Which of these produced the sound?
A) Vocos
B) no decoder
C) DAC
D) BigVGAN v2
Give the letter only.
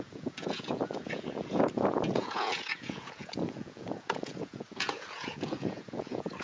A